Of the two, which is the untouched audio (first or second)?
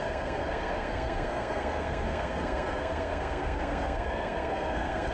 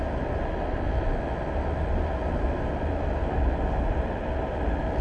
second